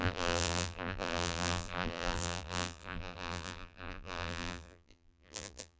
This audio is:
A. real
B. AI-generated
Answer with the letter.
B